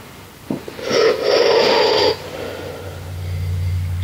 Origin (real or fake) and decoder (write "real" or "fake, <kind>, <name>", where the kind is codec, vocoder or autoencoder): real